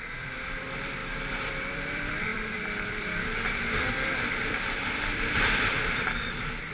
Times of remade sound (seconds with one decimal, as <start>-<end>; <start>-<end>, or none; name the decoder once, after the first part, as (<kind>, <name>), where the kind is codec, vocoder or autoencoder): 0.0-1.0 (vocoder, BigVGAN v2); 1.5-6.7